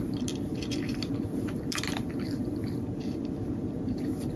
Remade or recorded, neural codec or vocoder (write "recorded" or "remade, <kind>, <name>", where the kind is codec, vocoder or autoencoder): remade, vocoder, BigVGAN v2